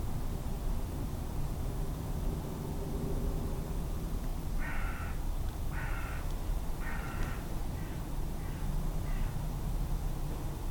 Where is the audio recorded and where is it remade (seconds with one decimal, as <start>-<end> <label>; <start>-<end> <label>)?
0.0-0.5 recorded; 0.5-1.3 remade; 1.3-4.3 recorded; 4.3-6.0 remade; 6.0-7.6 recorded; 7.6-8.6 remade; 8.6-10.7 recorded